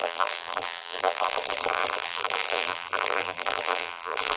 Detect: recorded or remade remade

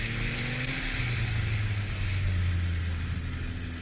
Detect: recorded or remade recorded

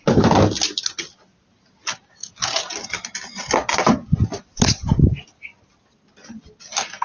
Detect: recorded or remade recorded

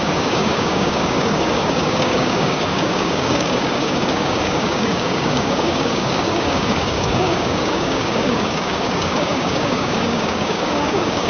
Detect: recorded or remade remade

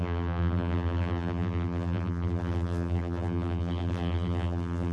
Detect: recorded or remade remade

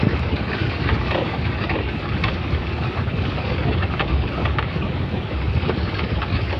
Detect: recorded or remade remade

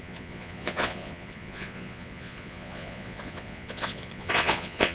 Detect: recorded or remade remade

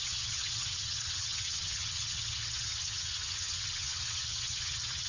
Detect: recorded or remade remade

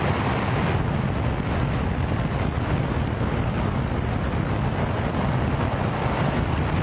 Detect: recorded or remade recorded